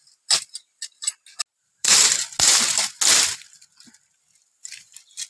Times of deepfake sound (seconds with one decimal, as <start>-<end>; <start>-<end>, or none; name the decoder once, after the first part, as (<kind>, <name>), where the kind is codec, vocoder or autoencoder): 1.5-2.2 (vocoder, BigVGAN v2)